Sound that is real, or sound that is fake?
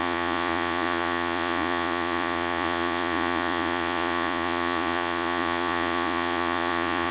fake